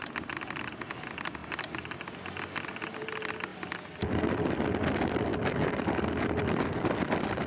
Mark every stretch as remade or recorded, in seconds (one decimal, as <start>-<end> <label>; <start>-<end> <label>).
0.0-7.5 recorded